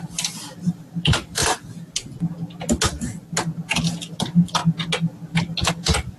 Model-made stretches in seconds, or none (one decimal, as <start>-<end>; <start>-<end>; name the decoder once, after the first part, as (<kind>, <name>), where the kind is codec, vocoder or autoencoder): 0.0-1.4 (vocoder, BigVGAN v2); 4.1-4.6; 5.7-6.2